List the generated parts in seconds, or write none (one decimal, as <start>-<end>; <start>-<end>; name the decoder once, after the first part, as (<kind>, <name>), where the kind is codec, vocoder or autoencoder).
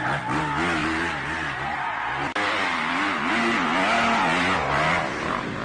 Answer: none